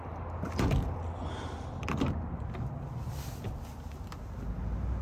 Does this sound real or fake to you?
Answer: real